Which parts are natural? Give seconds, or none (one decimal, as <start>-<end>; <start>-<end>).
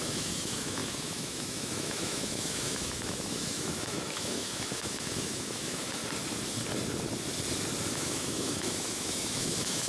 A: 6.0-7.9